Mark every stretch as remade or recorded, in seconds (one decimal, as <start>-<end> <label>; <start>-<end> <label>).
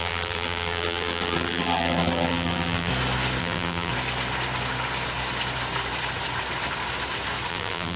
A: 0.0-2.9 remade; 2.9-3.4 recorded; 3.4-3.9 remade; 3.9-7.5 recorded; 7.5-8.0 remade